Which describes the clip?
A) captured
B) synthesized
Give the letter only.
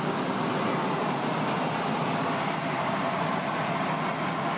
A